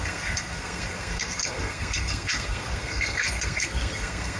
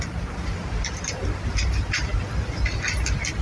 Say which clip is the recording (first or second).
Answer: second